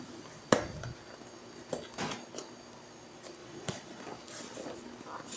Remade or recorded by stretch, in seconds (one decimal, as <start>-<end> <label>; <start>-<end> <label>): 0.0-3.4 recorded; 3.4-4.0 remade; 4.0-5.4 recorded